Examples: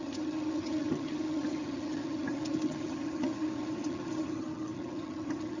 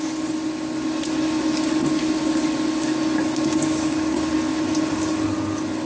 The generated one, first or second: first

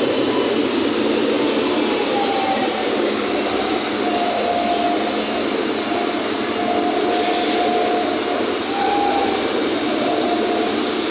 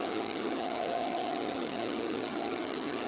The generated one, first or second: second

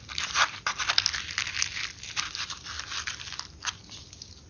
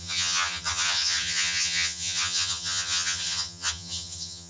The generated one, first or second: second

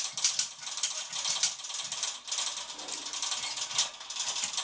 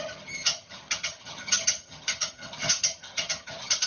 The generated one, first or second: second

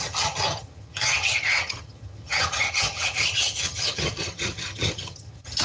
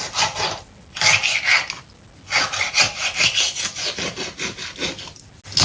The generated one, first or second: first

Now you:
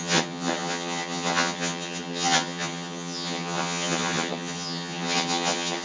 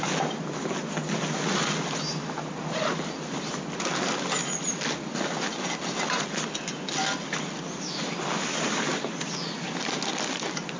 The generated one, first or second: first